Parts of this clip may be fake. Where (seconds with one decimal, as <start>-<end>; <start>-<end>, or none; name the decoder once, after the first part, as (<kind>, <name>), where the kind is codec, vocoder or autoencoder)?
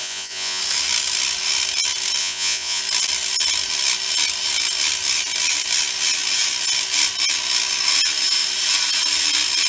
0.0-0.6 (vocoder, Vocos); 2.2-2.8